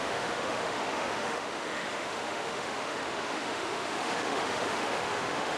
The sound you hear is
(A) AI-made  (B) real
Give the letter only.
A